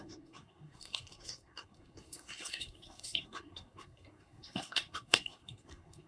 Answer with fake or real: fake